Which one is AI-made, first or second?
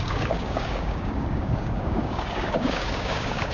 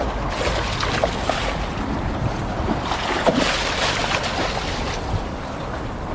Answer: first